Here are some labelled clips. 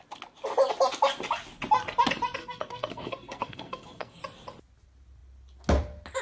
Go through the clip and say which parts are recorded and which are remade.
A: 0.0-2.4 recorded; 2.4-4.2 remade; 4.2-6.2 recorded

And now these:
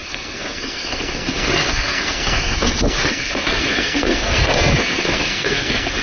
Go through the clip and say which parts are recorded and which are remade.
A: 0.0-6.0 remade